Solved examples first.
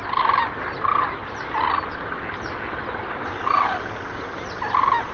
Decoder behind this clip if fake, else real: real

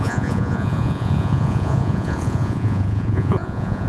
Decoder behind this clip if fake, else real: fake, vocoder, Vocos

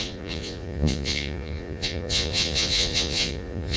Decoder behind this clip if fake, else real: fake, vocoder, Vocos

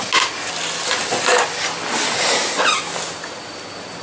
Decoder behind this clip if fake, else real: real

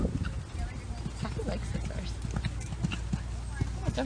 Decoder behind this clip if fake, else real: real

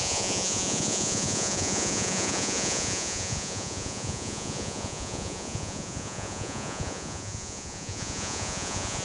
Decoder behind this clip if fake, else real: fake, vocoder, Vocos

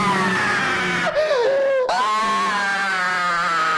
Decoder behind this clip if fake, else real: real